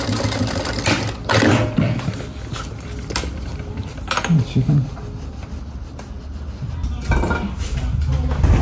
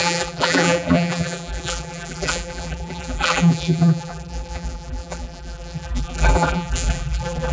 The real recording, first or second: first